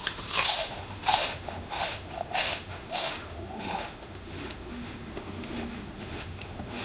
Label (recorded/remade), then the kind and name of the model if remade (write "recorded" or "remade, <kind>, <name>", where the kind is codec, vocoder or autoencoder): remade, autoencoder, DAC-VAE